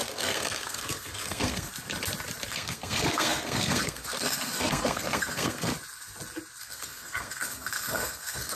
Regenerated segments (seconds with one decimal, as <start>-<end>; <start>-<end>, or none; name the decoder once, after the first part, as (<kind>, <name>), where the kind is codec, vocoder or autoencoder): 0.0-1.7 (codec, SNAC); 2.5-5.7; 6.6-8.6